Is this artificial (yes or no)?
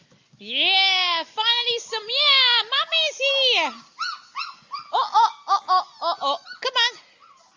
no